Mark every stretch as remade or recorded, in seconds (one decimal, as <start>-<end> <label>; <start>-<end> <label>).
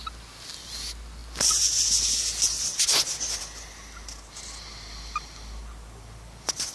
0.0-6.7 recorded